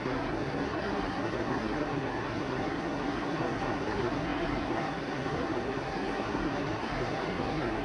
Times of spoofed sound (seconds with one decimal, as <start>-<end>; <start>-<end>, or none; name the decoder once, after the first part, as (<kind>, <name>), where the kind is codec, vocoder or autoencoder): 0.0-7.8 (codec, SNAC)